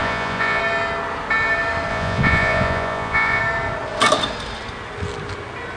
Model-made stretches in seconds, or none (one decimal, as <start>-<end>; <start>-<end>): 0.0-0.6; 1.9-3.4